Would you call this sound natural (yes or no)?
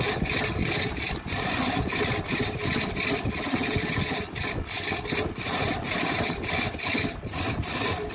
yes